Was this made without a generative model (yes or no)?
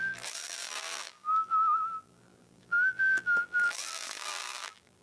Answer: no